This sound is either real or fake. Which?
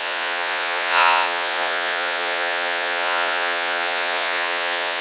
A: fake